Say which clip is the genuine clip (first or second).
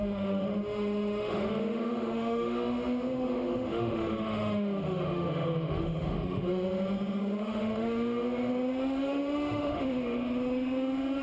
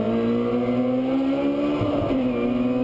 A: second